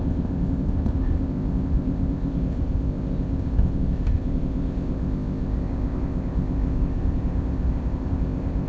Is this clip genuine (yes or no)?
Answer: no